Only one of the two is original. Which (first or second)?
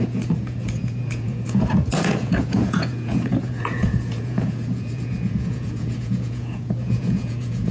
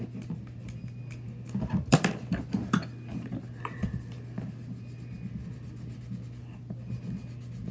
second